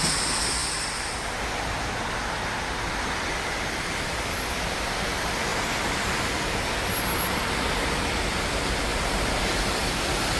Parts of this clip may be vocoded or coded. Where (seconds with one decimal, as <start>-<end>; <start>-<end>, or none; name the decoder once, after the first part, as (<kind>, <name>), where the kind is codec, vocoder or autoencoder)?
5.5-6.2 (vocoder, BigVGAN v2); 8.9-10.4